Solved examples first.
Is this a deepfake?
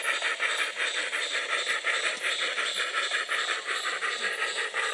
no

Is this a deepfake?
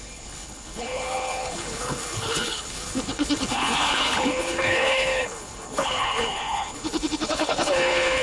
yes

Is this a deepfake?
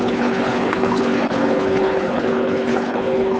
yes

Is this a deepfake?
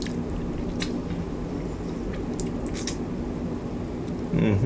no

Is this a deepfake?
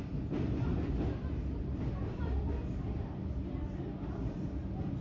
no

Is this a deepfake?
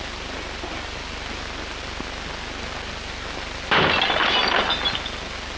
no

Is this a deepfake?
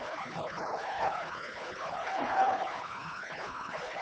yes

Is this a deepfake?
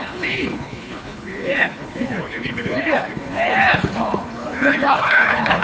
yes